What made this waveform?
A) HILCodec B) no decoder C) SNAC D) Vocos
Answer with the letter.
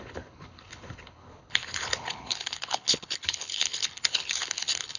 A